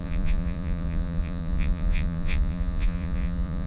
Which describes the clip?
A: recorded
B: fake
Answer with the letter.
B